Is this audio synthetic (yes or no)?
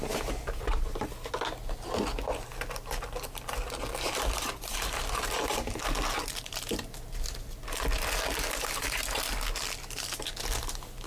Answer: no